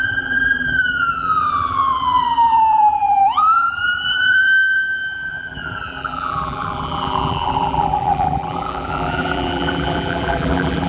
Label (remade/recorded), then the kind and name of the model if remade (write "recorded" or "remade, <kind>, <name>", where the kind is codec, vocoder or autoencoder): remade, vocoder, BigVGAN v2